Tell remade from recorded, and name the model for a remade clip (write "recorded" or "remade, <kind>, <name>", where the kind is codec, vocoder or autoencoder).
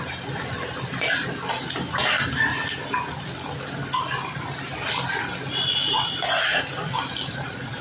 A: recorded